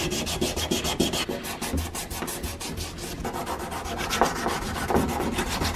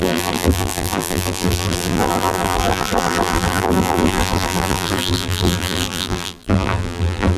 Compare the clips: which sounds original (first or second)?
first